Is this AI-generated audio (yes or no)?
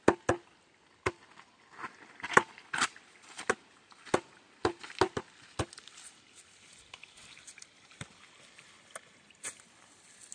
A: no